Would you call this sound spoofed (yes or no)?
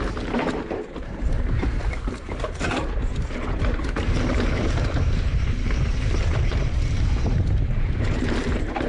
yes